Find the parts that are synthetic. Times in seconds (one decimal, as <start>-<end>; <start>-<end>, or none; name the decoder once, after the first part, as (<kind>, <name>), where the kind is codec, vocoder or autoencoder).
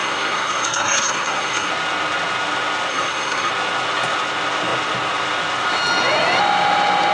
0.0-1.7 (codec, SNAC); 2.9-3.5